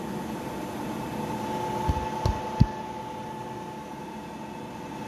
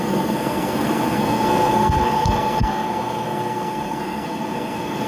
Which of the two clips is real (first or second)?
first